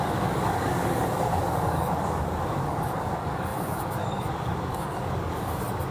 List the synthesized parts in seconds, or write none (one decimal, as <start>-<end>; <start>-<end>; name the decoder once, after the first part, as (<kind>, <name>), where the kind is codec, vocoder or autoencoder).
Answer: 0.0-5.9 (codec, DAC)